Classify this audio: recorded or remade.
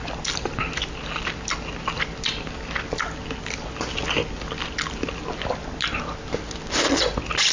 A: recorded